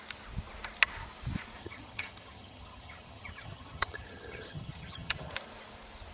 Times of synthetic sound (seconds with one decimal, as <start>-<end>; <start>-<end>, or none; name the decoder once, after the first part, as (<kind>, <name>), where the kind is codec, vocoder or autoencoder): 1.6-5.3 (vocoder, HiFi-GAN)